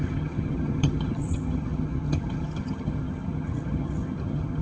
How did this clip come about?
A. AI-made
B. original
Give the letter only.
A